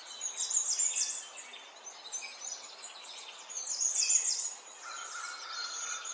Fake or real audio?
real